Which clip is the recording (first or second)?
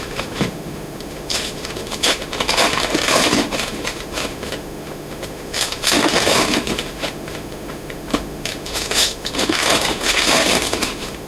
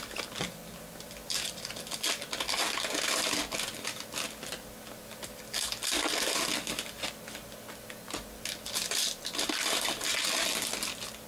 second